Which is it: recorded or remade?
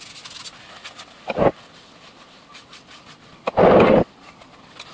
recorded